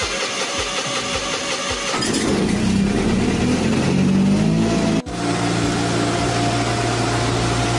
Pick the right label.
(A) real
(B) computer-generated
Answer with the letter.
A